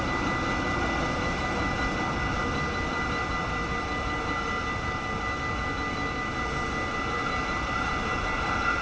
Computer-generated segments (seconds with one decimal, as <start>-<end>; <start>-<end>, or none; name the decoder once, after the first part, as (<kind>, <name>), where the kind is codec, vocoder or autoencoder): none